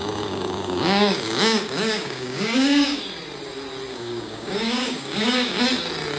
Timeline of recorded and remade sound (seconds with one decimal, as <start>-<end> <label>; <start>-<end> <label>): 0.0-3.0 remade; 3.0-3.9 recorded; 3.9-5.6 remade; 5.6-6.2 recorded